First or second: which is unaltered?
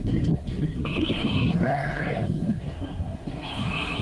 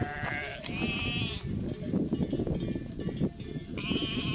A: second